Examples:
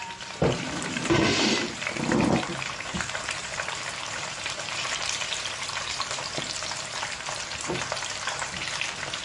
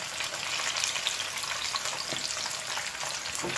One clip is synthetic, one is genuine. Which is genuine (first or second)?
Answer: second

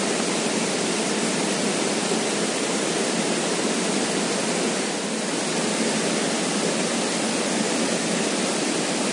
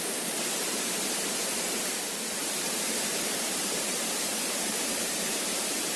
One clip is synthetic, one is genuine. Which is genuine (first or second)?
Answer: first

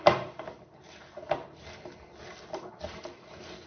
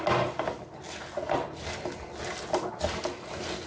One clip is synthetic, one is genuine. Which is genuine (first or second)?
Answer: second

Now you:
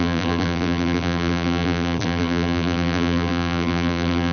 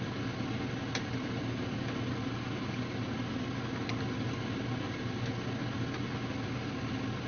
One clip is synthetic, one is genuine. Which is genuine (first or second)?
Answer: second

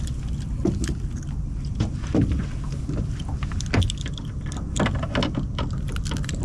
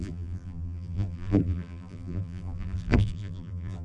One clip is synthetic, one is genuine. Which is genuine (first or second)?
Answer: first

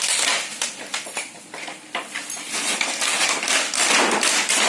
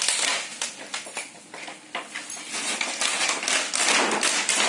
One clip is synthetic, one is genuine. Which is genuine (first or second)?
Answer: second